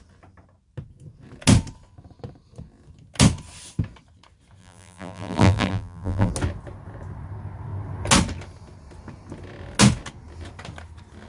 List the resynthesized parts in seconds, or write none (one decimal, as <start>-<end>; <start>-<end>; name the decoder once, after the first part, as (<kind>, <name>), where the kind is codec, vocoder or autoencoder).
4.6-6.3 (vocoder, BigVGAN v2)